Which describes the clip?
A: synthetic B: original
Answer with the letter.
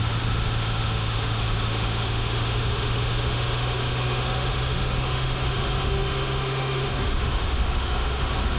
A